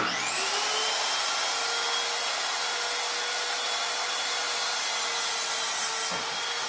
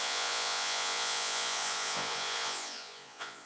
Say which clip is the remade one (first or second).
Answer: second